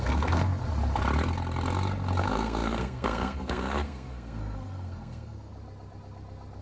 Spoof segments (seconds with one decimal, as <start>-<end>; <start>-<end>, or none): 0.0-0.5; 2.2-5.5